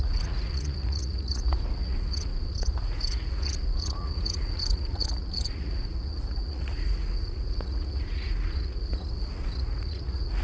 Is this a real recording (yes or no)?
no